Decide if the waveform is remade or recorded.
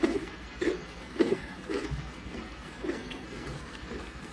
remade